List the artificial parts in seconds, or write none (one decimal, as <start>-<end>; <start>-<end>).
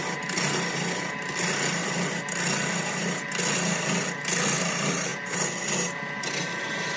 none